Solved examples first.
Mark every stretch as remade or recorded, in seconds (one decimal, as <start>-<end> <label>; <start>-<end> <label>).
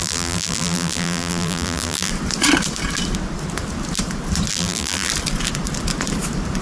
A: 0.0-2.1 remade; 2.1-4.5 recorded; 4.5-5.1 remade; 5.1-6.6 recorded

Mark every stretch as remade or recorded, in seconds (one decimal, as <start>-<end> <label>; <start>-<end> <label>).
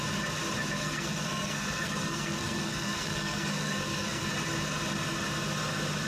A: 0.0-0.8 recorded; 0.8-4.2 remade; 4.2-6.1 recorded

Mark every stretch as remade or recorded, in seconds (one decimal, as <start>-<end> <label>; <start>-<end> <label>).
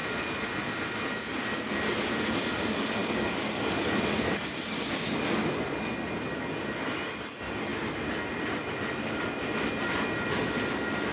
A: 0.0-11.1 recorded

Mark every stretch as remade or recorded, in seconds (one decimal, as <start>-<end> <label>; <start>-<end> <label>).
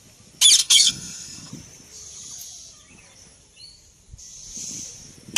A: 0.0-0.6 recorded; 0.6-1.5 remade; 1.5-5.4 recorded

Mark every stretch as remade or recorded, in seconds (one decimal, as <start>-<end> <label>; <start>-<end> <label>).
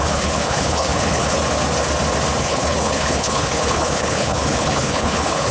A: 0.0-1.4 remade; 1.4-2.4 recorded; 2.4-5.5 remade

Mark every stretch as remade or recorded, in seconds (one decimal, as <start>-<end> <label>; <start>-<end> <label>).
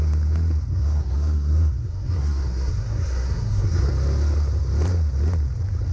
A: 0.0-0.7 recorded; 0.7-3.9 remade; 3.9-5.9 recorded